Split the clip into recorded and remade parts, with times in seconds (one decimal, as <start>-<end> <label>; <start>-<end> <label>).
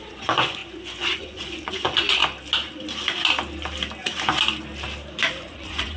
0.0-2.2 remade; 2.2-5.3 recorded; 5.3-6.0 remade